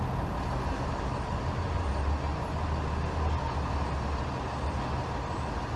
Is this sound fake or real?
real